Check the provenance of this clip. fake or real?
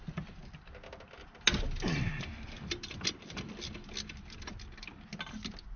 real